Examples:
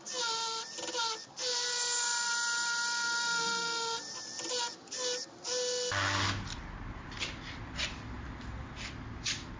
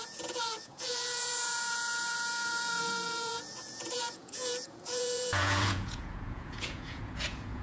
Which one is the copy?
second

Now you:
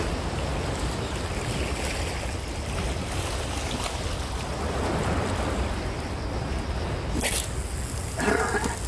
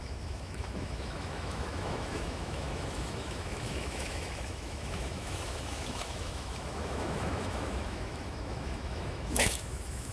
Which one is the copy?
second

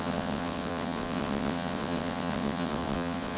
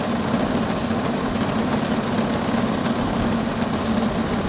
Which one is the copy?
first